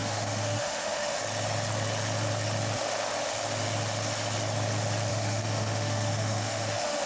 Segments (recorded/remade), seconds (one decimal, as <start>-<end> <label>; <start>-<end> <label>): 0.0-1.2 remade; 1.2-5.1 recorded; 5.1-7.1 remade